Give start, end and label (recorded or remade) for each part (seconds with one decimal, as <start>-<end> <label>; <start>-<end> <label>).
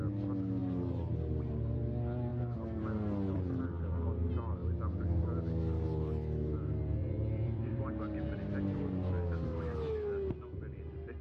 0.0-7.0 recorded; 7.0-7.9 remade; 7.9-11.2 recorded